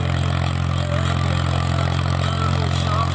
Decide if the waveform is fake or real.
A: real